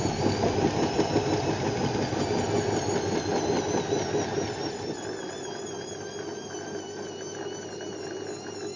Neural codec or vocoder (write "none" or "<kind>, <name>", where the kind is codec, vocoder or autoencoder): none